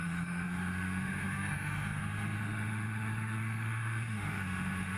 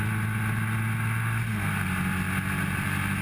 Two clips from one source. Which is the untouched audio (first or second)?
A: second